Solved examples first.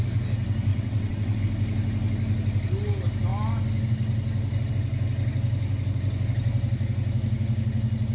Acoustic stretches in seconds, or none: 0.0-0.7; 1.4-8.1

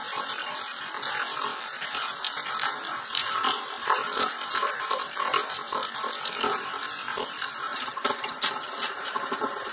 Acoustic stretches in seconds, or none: 5.8-6.3

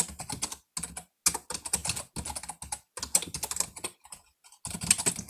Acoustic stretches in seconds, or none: 0.0-5.3